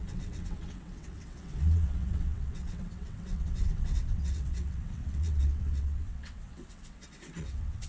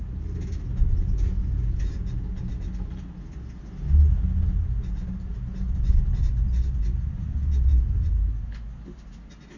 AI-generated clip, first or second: first